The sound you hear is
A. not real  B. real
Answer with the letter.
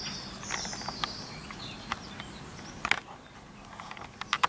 B